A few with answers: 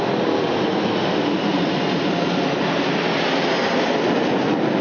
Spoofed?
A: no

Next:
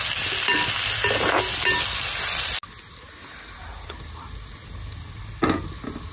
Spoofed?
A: no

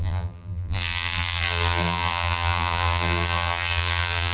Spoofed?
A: yes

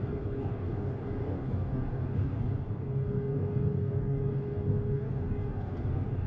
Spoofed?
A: yes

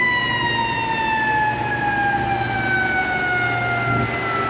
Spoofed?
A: no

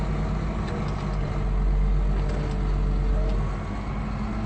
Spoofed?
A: no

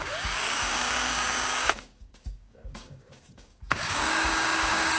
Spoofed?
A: yes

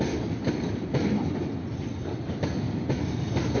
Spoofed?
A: yes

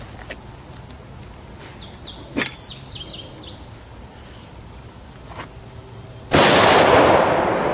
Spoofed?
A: no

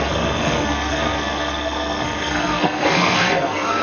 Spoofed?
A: yes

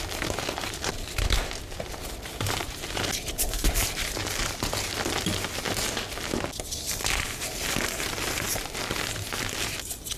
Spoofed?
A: no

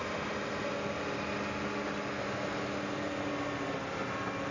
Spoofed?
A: no